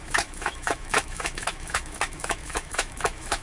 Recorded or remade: remade